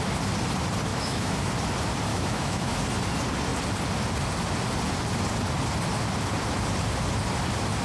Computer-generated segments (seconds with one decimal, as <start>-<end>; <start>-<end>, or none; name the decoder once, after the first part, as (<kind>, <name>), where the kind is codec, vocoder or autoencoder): 0.9-1.5 (autoencoder, DAC-VAE); 2.1-2.8